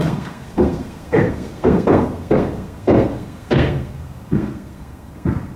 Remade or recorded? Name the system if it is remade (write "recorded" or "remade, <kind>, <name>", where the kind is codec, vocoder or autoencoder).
remade, codec, SNAC